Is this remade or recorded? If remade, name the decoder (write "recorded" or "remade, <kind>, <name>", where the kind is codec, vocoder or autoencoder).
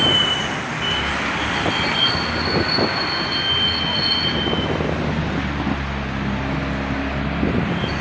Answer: recorded